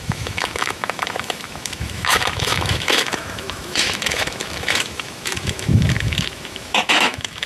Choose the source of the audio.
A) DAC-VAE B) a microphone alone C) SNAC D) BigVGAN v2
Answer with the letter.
A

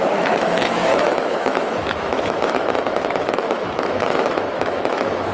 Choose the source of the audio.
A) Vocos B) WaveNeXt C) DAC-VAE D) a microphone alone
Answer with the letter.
C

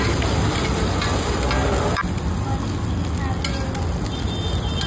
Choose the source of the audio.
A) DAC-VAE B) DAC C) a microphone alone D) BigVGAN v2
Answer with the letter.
C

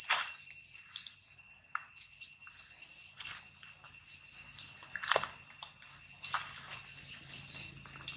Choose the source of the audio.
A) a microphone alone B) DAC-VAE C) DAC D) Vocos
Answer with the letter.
A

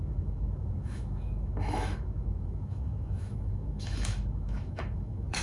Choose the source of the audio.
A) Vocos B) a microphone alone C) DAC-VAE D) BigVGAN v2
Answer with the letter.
C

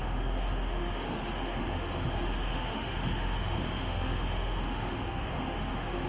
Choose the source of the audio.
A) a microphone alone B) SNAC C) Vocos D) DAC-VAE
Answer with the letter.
D